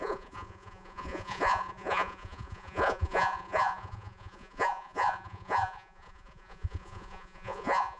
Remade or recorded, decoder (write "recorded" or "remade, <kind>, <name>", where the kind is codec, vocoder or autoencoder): remade, vocoder, Vocos